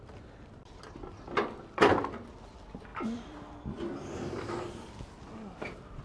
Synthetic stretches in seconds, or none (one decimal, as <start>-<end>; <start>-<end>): none